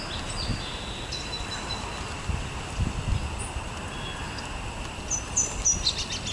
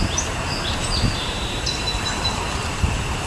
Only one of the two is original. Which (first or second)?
first